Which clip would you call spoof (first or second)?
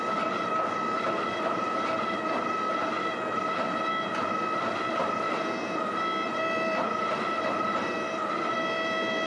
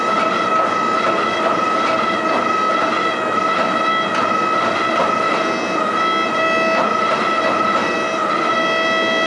first